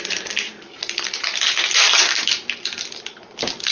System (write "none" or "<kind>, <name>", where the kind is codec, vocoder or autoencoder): none